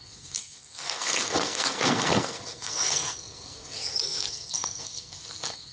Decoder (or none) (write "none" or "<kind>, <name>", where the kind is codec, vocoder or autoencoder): codec, SNAC